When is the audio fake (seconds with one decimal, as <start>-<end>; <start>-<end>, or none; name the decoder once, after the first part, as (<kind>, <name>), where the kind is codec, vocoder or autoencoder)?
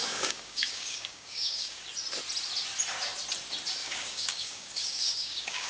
0.0-1.9 (codec, DAC); 3.8-5.7